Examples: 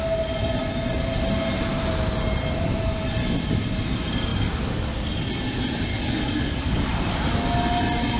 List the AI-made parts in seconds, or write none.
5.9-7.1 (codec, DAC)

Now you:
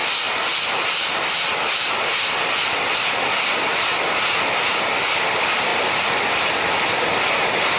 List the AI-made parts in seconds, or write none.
none

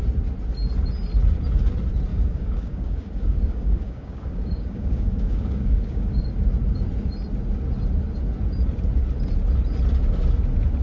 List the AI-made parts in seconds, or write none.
2.1-6.2 (codec, DAC)

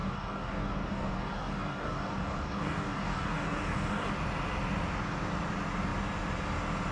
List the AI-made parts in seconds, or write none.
0.0-4.1 (codec, DAC)